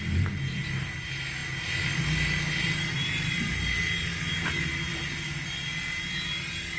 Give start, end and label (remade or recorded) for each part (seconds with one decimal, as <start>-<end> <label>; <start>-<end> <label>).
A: 0.0-6.8 recorded